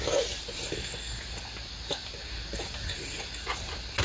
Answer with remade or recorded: recorded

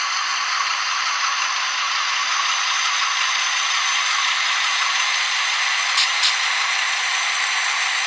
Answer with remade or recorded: recorded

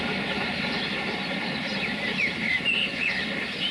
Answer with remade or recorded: remade